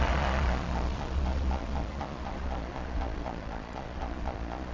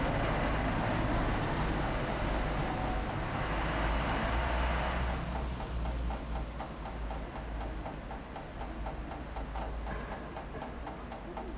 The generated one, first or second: first